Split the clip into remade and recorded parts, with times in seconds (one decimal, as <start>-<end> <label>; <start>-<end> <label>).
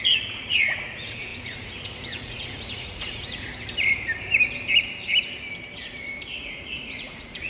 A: 0.0-3.5 remade; 3.5-6.4 recorded; 6.4-7.5 remade